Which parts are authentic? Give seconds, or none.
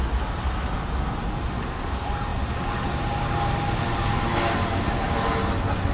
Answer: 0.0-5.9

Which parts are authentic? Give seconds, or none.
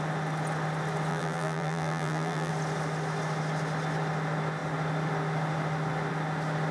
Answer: 0.0-1.1; 2.5-6.7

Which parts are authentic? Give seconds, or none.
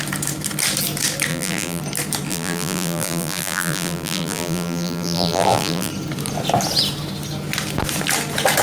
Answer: 0.0-1.3; 1.8-2.3; 5.9-8.6